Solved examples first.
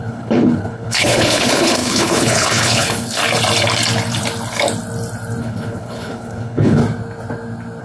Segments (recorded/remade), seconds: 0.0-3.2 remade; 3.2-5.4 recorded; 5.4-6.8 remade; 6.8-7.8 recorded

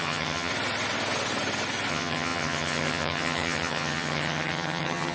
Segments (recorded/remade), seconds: 0.0-0.5 remade; 0.5-1.9 recorded; 1.9-5.1 remade